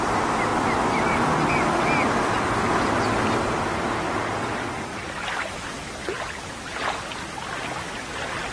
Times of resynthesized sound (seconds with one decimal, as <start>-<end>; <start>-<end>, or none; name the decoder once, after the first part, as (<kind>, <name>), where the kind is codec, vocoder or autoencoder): 4.9-5.7 (vocoder, BigVGAN v2)